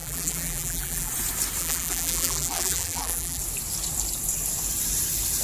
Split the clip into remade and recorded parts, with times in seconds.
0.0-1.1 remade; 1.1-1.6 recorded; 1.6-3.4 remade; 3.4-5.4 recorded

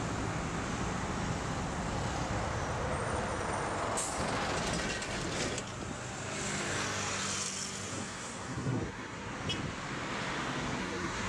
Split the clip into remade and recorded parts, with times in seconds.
0.0-7.9 recorded; 7.9-9.3 remade; 9.3-10.8 recorded; 10.8-11.3 remade

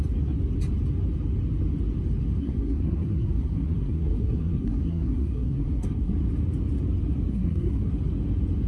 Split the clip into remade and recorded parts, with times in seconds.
0.0-2.4 recorded; 2.4-6.1 remade; 6.1-7.3 recorded; 7.3-7.9 remade; 7.9-8.7 recorded

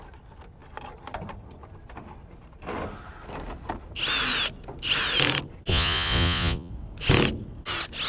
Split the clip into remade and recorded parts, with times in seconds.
0.0-5.7 recorded; 5.7-6.7 remade; 6.7-8.1 recorded

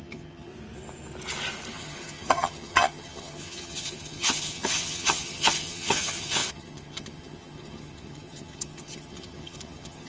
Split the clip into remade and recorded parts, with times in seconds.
0.0-0.5 remade; 0.5-1.7 recorded; 1.7-10.1 remade

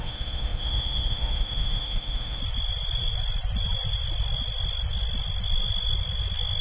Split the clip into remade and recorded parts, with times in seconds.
0.0-2.4 remade; 2.4-6.6 recorded

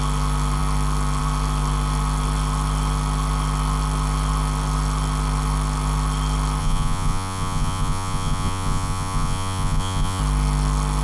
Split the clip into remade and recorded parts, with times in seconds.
0.0-6.6 recorded; 6.6-10.2 remade; 10.2-11.0 recorded